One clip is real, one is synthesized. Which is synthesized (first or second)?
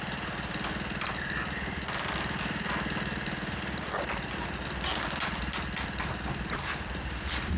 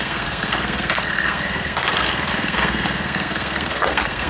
second